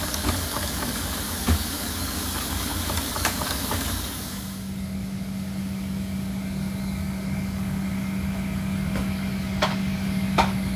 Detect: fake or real fake